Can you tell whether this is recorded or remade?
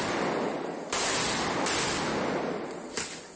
recorded